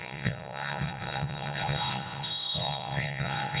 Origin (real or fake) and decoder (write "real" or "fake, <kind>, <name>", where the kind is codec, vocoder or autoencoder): fake, vocoder, WaveNeXt